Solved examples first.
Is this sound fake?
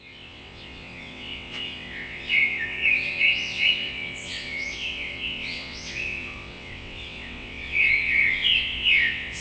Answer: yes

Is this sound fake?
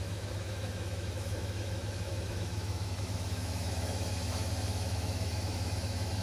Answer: yes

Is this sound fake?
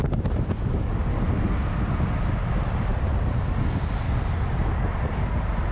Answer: no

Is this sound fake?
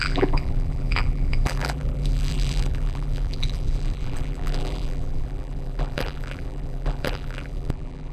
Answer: yes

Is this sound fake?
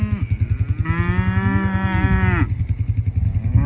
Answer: no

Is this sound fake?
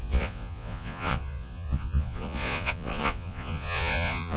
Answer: yes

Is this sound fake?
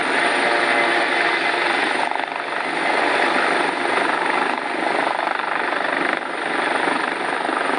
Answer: no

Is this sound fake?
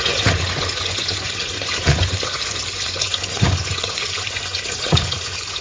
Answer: yes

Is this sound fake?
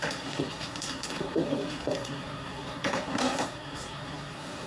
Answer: yes